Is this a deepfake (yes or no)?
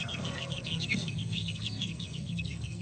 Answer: yes